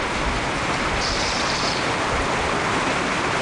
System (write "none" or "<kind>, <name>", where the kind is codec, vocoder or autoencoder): vocoder, BigVGAN v2